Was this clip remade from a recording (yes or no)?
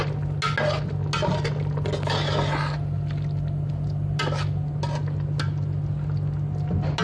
no